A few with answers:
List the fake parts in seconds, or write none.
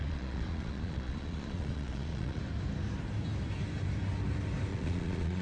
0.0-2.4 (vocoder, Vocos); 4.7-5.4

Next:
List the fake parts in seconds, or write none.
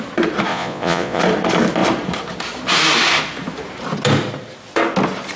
0.5-1.2 (vocoder, Vocos)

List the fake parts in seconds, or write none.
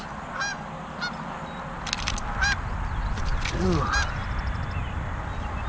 none